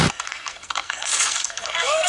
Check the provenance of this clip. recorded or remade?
remade